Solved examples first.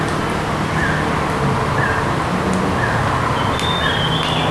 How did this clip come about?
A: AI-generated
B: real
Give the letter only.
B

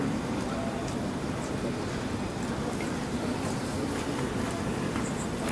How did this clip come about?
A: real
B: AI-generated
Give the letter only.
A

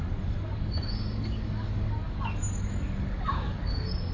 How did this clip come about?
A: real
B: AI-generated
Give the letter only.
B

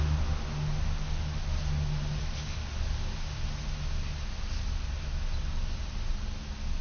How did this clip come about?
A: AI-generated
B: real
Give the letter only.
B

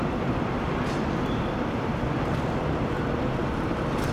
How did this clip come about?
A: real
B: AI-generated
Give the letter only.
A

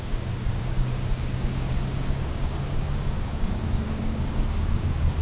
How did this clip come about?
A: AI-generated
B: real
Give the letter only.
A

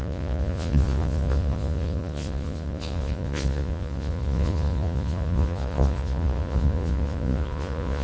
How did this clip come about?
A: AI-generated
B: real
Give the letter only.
A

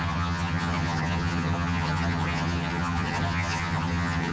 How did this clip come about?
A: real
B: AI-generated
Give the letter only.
B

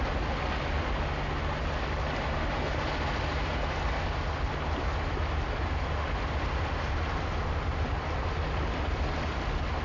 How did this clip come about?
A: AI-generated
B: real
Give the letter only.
B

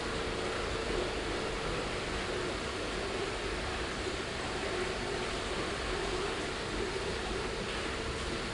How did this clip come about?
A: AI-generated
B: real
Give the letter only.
B